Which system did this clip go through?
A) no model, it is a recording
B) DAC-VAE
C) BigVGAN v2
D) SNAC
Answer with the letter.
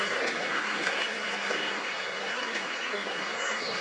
D